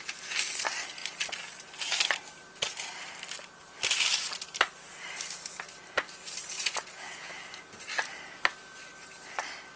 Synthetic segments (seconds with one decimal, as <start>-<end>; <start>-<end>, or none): 6.4-7.3